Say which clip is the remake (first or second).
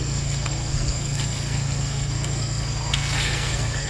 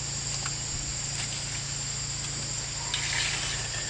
first